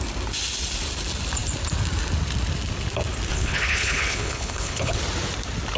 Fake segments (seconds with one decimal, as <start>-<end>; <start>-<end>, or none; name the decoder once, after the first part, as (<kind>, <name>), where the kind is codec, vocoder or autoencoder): 3.3-5.0 (codec, HILCodec)